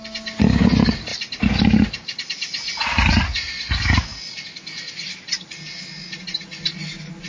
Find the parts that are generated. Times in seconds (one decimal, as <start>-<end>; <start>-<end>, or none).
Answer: none